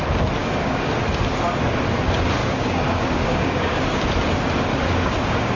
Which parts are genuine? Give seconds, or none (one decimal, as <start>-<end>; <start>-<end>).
0.0-0.4; 0.9-2.4; 4.0-4.7